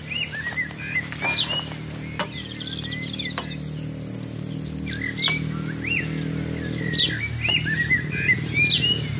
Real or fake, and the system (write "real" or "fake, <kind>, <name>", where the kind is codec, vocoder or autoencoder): real